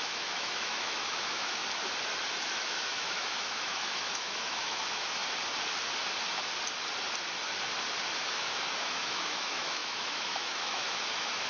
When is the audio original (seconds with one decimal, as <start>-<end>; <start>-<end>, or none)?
1.6-2.3; 5.2-8.3